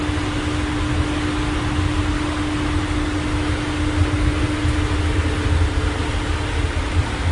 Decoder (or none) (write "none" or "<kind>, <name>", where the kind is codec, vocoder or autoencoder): none